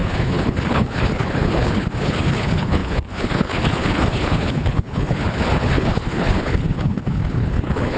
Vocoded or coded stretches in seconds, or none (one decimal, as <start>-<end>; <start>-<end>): 0.0-8.0